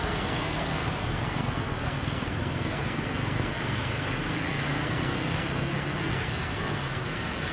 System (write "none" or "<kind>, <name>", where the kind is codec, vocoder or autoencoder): codec, SNAC